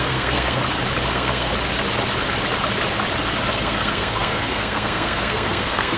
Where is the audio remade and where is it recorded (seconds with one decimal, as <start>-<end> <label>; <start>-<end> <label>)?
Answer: 0.0-0.6 remade; 0.6-1.1 recorded; 1.1-1.5 remade; 1.5-3.5 recorded; 3.5-6.0 remade